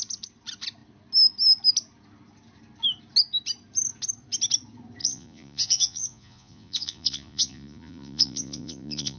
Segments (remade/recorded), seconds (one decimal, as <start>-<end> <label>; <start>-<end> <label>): 0.0-5.0 recorded; 5.0-9.2 remade